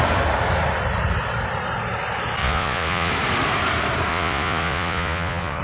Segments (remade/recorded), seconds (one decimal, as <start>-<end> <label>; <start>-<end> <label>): 0.0-2.4 recorded; 2.4-3.1 remade; 3.1-4.1 recorded; 4.1-5.6 remade